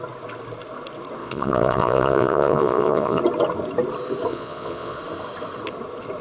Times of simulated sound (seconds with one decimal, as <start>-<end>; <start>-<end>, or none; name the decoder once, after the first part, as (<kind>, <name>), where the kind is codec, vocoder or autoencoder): 1.2-3.2 (vocoder, Vocos); 4.3-5.0